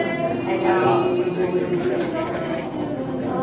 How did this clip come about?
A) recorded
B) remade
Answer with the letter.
B